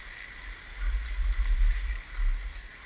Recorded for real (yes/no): yes